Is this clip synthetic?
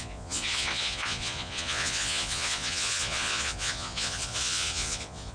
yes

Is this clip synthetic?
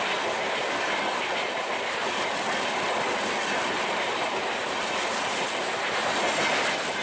no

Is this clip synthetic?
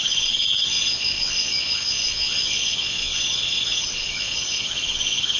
yes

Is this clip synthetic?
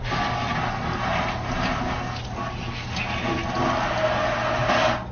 no